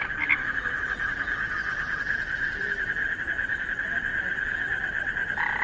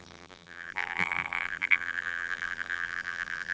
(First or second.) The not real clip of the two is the second